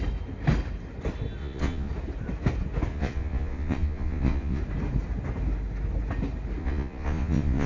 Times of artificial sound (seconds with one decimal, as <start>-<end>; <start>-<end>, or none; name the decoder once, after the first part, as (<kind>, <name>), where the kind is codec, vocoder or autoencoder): 1.4-1.9 (vocoder, Vocos); 2.9-4.6; 6.6-7.7

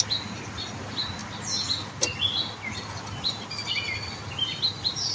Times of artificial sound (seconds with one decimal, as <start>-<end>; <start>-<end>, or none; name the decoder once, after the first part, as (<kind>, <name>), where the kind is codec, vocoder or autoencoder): none